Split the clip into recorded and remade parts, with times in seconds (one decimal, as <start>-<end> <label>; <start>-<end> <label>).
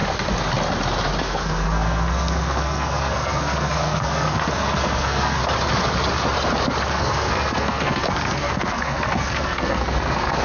0.0-1.2 recorded; 1.2-5.4 remade; 5.4-6.9 recorded; 6.9-10.4 remade